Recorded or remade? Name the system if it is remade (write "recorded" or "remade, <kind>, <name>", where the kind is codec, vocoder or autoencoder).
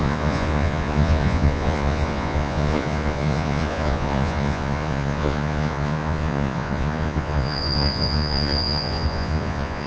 remade, vocoder, Vocos